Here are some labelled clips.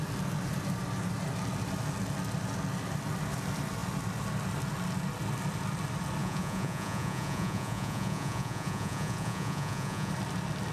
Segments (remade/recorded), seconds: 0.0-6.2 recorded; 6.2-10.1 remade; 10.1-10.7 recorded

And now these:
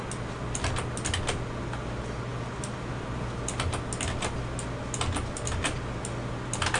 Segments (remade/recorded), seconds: 0.0-6.8 recorded